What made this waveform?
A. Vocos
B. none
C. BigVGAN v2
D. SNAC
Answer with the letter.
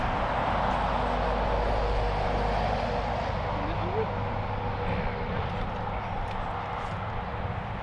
B